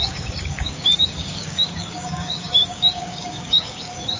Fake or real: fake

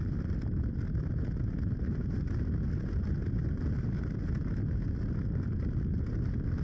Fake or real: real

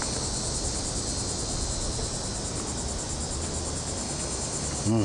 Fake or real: real